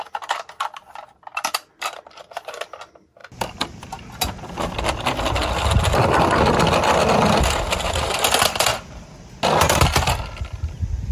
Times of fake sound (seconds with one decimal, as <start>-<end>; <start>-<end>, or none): none